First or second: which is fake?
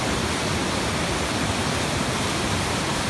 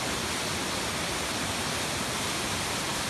first